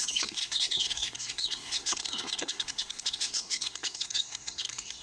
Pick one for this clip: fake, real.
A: fake